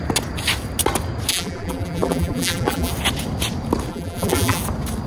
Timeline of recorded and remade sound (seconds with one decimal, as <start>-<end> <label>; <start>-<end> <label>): 0.0-1.3 recorded; 1.3-2.9 remade; 2.9-3.9 recorded; 3.9-4.6 remade; 4.6-5.1 recorded